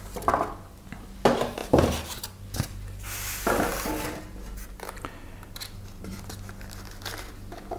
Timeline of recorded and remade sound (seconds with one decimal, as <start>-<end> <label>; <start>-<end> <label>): 0.0-1.6 recorded; 1.6-2.2 remade; 2.2-7.8 recorded